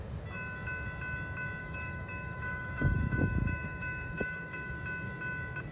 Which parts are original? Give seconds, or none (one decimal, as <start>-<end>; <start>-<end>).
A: 0.0-1.6; 4.7-5.7

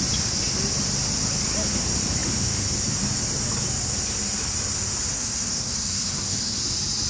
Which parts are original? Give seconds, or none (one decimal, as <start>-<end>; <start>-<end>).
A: 0.0-5.1; 6.6-7.1

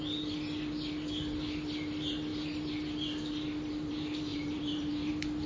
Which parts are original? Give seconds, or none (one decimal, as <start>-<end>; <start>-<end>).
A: 0.0-4.3; 5.1-5.5